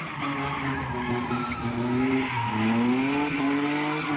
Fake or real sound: real